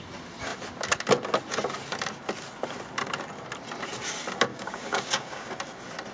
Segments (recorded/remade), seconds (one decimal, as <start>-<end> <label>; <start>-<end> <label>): 0.0-4.5 recorded; 4.5-5.5 remade; 5.5-6.1 recorded